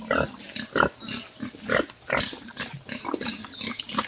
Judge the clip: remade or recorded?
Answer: recorded